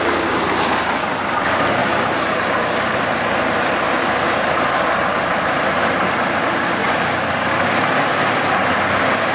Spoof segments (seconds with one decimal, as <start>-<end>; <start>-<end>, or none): 1.8-4.0

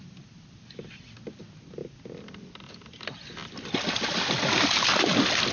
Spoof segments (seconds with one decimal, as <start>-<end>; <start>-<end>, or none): none

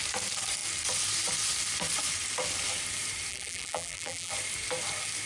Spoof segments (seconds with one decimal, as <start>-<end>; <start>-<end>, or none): 3.3-4.3

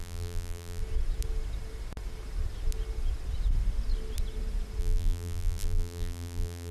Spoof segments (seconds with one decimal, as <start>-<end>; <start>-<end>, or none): 0.0-0.8; 4.8-6.7

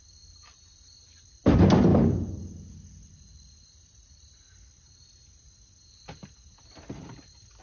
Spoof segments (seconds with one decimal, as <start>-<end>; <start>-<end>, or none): 1.9-2.4

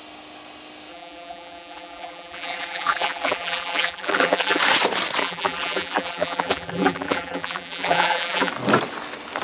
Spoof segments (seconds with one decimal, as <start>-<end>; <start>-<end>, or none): 0.9-4.6; 5.2-8.5

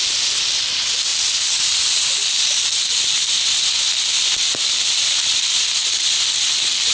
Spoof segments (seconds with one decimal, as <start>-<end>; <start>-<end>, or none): none